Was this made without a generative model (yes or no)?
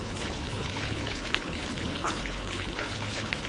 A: no